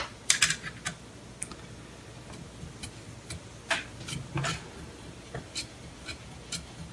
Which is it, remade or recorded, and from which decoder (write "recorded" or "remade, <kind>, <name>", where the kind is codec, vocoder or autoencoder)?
recorded